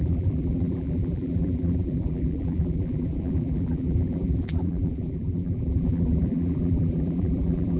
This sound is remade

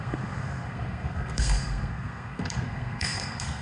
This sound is remade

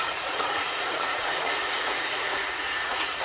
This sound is remade